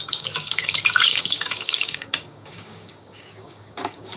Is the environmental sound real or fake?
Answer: fake